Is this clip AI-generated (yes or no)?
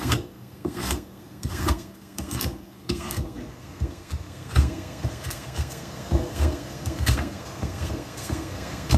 yes